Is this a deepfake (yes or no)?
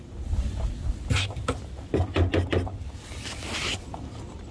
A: no